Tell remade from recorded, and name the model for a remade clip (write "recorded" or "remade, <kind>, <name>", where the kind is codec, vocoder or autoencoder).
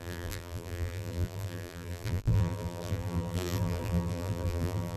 remade, vocoder, BigVGAN v2